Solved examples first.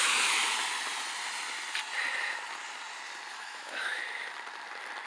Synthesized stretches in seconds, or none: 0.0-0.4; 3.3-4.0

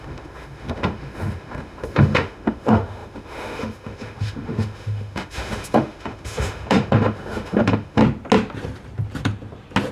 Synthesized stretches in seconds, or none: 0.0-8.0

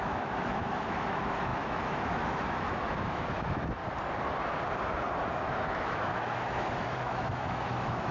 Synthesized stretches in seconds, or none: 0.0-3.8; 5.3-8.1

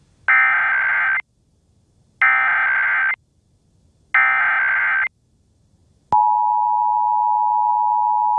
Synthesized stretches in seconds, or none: none

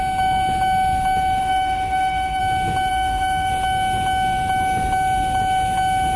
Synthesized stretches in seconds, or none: 1.4-2.4; 2.9-3.5